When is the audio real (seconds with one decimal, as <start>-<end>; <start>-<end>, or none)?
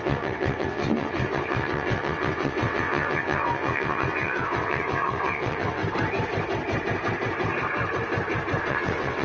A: 5.8-8.7